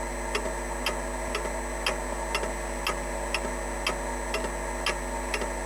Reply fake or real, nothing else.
real